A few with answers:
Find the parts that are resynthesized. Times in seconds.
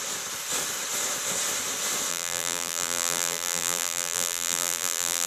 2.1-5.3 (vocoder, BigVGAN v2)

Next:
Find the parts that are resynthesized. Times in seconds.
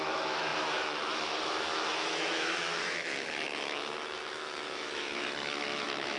0.0-6.2 (autoencoder, DAC-VAE)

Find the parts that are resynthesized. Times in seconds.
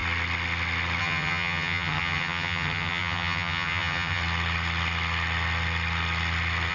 1.0-4.2 (vocoder, HiFi-GAN)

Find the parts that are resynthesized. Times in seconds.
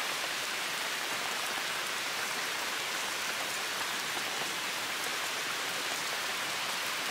0.0-7.1 (vocoder, BigVGAN v2)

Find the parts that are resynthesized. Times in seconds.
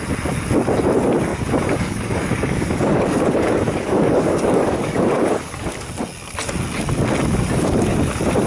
1.3-5.7 (codec, DAC)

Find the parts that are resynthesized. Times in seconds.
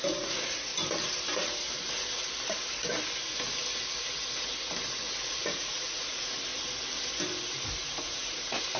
0.0-0.7 (vocoder, Vocos); 5.2-6.5; 7.8-8.8